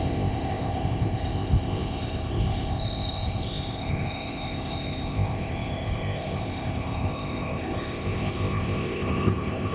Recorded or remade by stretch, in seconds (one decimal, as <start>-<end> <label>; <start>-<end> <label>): 0.0-9.7 remade